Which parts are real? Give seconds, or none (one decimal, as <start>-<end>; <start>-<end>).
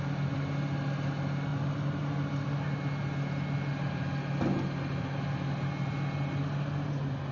0.0-7.3